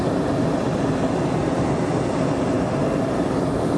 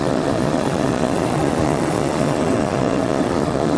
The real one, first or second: first